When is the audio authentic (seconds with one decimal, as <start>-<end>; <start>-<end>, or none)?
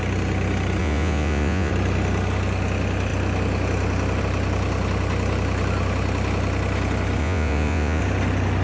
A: 0.0-0.8; 1.7-7.2; 8.0-8.6